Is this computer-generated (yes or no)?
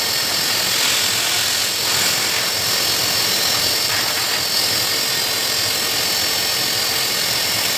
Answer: no